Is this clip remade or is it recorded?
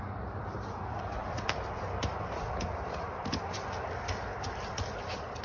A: remade